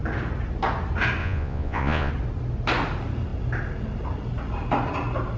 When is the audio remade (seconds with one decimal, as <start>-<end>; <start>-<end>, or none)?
1.2-2.1